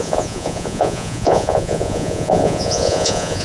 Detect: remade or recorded remade